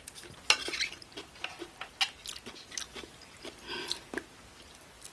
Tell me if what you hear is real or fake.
real